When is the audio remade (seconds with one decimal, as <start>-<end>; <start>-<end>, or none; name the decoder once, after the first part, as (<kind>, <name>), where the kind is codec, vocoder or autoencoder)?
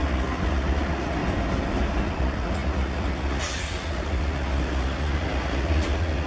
0.0-1.2 (vocoder, Vocos); 2.0-6.3